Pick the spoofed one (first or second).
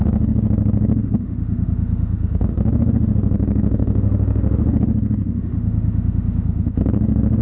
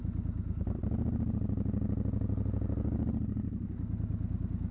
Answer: first